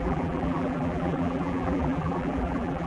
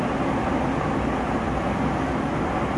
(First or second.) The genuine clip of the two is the second